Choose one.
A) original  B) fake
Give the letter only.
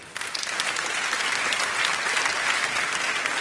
A